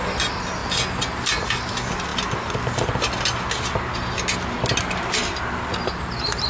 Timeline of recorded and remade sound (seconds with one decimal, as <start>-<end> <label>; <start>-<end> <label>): 0.0-6.5 recorded